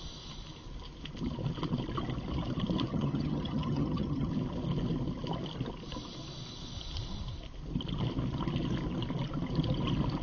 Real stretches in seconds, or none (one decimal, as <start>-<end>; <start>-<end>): 0.0-2.9; 4.3-10.2